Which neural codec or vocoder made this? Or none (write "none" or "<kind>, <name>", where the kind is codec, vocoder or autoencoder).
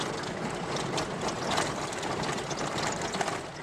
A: none